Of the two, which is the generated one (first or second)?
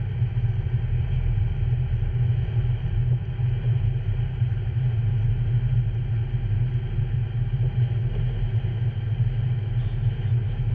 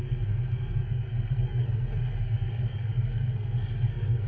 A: second